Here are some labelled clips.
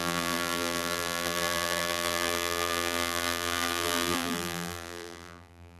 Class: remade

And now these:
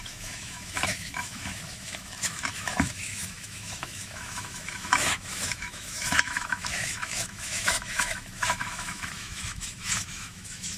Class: remade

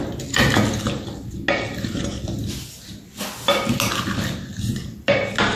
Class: recorded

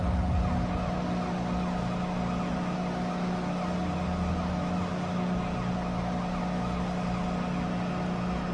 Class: recorded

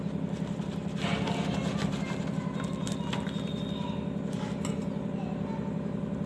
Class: recorded